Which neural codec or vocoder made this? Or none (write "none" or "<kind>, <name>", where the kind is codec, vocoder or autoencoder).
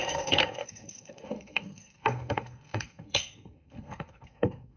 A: codec, SNAC